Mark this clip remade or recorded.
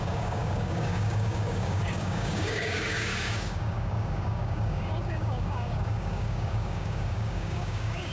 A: remade